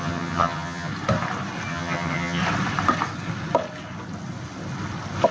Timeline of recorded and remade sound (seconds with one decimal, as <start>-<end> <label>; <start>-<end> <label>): 0.0-0.9 remade; 0.9-1.7 recorded; 1.7-2.4 remade; 2.4-5.3 recorded